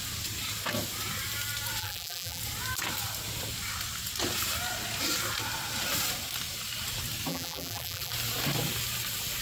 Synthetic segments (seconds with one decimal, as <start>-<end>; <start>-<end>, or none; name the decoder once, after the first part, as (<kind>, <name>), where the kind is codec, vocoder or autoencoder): 1.8-2.4 (vocoder, BigVGAN v2); 7.3-8.1